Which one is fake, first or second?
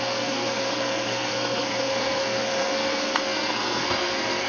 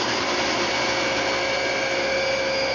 first